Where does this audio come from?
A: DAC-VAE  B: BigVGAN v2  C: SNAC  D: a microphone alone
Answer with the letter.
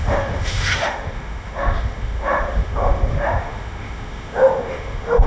A